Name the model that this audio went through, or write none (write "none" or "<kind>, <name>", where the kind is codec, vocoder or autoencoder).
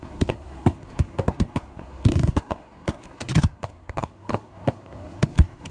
codec, SNAC